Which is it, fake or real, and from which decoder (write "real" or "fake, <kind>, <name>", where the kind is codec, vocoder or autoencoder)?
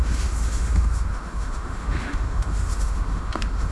fake, autoencoder, DAC-VAE